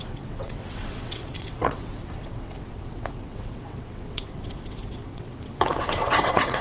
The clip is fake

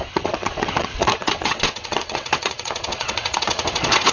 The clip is fake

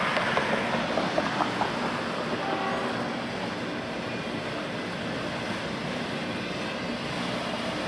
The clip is real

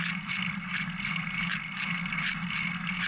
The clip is real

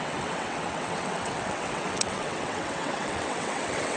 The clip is fake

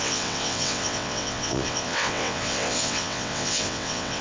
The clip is fake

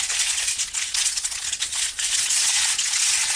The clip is fake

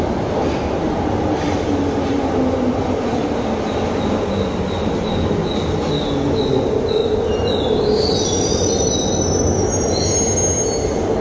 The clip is real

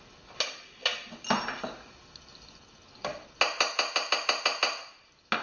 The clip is real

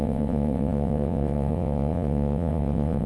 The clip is fake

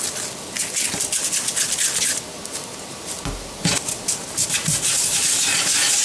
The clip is real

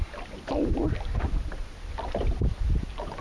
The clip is real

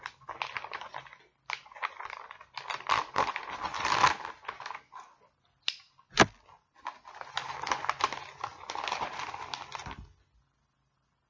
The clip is real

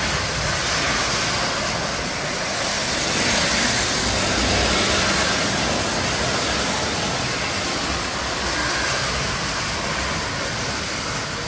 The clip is real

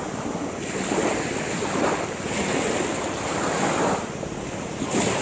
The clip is real